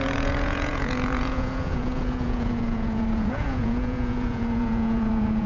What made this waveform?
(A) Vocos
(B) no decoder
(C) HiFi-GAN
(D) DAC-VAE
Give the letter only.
A